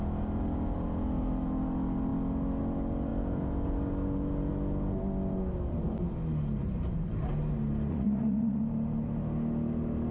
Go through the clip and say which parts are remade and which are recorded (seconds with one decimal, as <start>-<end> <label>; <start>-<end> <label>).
0.0-7.9 recorded; 7.9-8.6 remade; 8.6-10.1 recorded